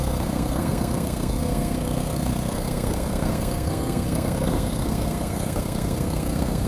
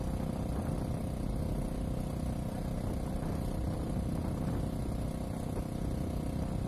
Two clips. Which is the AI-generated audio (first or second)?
first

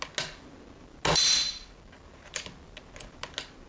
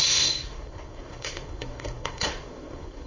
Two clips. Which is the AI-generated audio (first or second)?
second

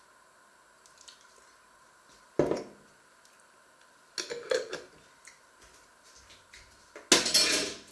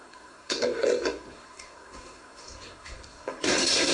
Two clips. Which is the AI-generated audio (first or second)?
second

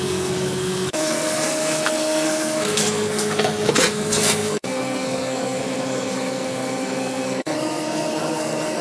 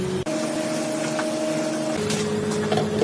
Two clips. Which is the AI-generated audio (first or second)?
first